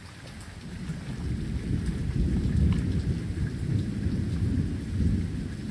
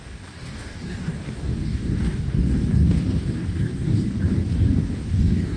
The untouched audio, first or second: first